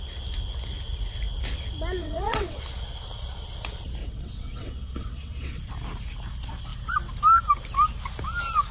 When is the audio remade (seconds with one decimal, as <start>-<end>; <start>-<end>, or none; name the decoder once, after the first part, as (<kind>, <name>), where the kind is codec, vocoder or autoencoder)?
2.0-2.6 (vocoder, WaveNeXt); 4.0-5.6